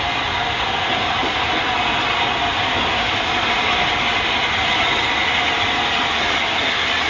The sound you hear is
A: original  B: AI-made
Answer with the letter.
A